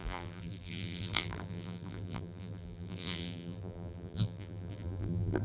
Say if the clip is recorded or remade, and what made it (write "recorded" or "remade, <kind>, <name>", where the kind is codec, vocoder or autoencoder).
remade, vocoder, BigVGAN v2